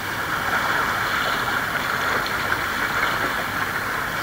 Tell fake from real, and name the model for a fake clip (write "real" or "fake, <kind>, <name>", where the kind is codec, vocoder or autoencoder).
real